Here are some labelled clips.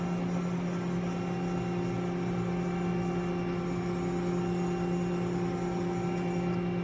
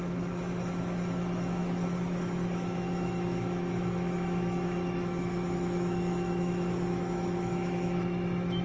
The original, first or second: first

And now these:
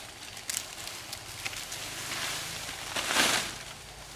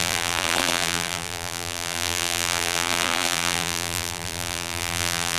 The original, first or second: first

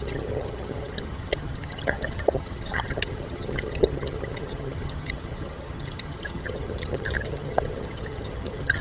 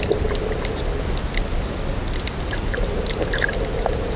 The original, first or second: second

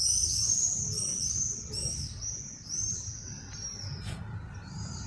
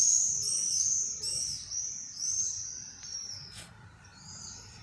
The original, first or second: first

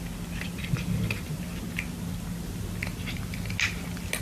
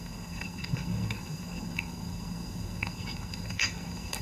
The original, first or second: first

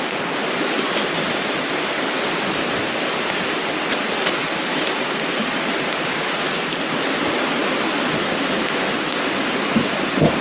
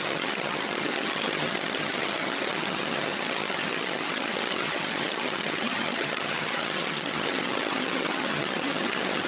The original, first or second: first